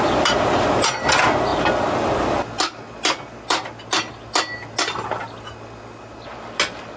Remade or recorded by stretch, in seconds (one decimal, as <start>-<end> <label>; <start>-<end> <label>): 0.0-7.0 recorded